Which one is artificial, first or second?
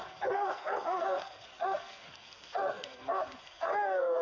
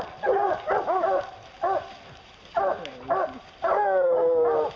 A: first